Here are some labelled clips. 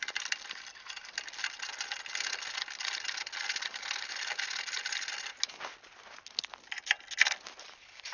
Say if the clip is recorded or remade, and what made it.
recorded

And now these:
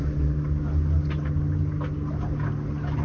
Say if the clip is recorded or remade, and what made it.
recorded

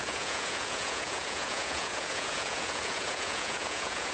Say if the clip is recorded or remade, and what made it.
remade, vocoder, Vocos